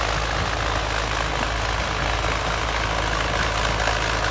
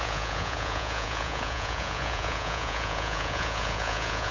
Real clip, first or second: first